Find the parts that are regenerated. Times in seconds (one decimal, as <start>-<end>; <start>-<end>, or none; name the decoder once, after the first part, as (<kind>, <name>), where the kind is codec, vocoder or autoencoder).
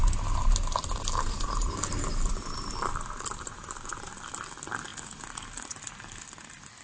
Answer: 0.0-4.1 (vocoder, BigVGAN v2)